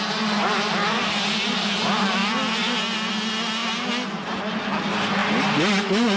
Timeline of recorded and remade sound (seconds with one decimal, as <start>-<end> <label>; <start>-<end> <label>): 0.0-6.2 recorded